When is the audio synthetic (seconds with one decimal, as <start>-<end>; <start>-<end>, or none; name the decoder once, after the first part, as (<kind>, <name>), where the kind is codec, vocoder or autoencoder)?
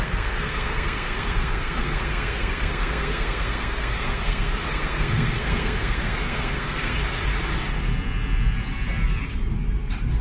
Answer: 0.0-7.0 (codec, SNAC)